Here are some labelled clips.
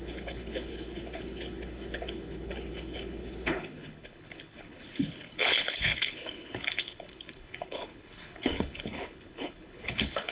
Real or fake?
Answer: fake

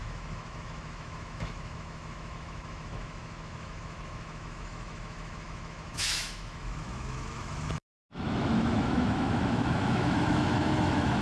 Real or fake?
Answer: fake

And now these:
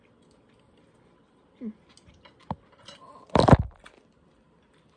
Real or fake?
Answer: real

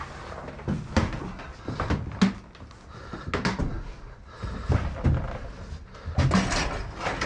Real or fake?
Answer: real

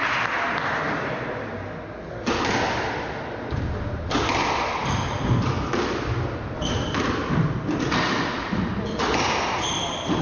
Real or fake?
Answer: real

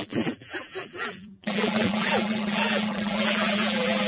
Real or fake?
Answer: fake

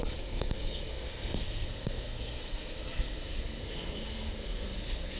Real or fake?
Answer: fake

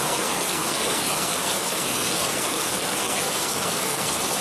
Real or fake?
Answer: fake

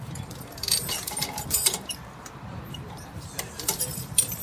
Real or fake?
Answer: fake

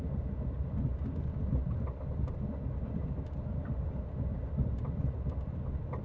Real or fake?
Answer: real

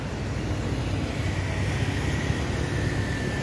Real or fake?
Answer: real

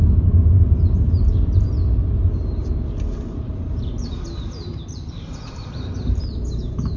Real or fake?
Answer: fake